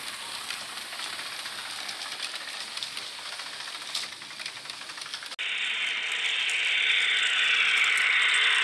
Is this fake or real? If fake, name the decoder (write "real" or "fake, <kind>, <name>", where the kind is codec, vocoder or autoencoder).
real